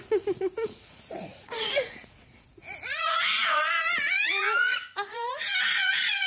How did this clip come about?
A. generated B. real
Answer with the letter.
A